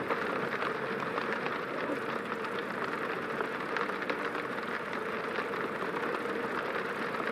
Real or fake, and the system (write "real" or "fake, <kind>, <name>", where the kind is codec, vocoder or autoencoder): real